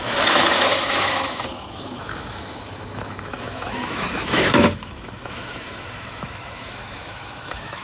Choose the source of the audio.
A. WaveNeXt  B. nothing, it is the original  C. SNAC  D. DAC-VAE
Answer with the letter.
D